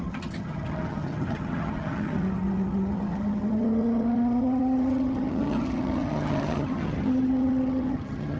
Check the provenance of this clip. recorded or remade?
remade